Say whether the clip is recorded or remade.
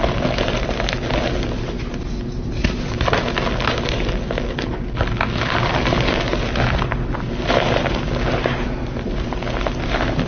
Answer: recorded